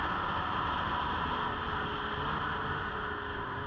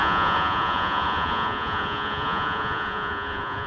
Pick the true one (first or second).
first